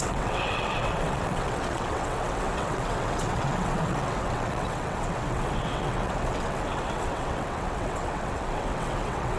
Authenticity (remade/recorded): remade